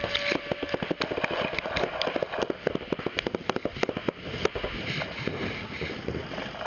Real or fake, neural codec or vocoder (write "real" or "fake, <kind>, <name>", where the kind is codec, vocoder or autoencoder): real